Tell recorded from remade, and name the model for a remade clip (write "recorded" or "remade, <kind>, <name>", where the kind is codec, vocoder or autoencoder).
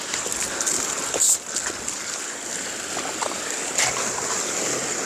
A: recorded